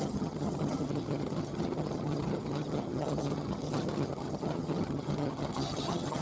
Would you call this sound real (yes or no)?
no